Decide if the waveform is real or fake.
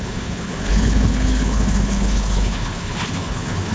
fake